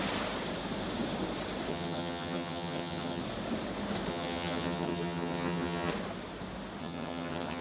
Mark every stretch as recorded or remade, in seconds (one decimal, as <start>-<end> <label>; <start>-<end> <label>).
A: 0.0-1.7 recorded; 1.7-3.2 remade; 3.2-4.1 recorded; 4.1-5.9 remade; 5.9-6.8 recorded; 6.8-7.6 remade